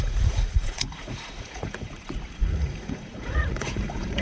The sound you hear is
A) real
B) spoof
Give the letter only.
B